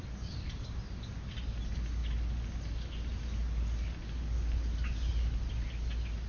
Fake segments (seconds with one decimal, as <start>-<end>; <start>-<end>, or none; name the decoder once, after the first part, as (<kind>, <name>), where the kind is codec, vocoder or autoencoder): none